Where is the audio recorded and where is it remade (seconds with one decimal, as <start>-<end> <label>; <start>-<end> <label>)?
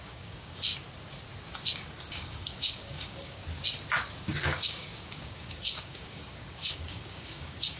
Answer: 0.0-0.7 remade; 0.7-2.0 recorded; 2.0-3.4 remade; 3.4-4.2 recorded; 4.2-7.8 remade